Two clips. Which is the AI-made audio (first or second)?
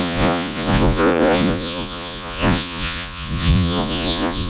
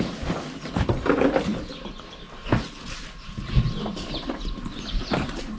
first